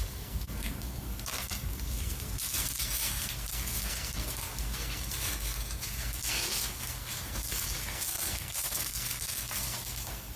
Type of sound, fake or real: fake